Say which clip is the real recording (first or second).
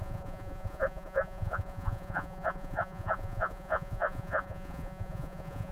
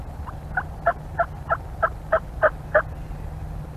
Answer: second